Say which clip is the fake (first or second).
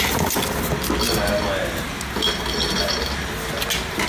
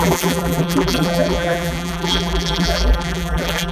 second